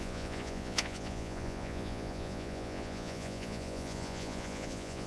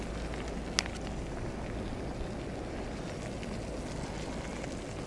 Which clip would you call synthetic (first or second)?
first